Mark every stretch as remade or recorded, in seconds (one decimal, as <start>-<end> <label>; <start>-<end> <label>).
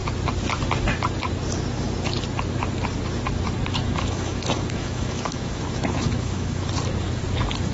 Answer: 0.0-3.8 recorded; 3.8-6.7 remade; 6.7-7.7 recorded